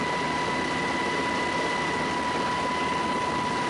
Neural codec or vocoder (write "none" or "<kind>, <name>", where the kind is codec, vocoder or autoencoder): none